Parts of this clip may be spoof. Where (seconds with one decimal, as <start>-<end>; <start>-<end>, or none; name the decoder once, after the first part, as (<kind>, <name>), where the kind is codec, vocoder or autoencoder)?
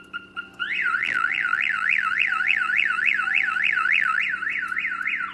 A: 1.0-4.2 (vocoder, BigVGAN v2)